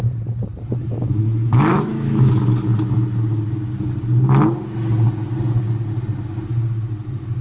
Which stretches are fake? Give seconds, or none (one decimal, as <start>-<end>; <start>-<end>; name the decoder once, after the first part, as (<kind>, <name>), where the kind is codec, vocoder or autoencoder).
0.8-2.3 (autoencoder, DAC-VAE)